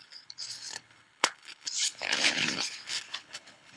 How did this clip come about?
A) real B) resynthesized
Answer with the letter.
B